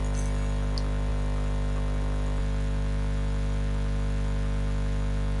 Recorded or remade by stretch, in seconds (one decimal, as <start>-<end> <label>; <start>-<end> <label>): 0.0-5.4 recorded